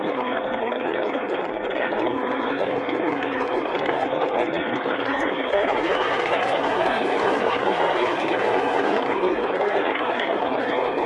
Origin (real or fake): fake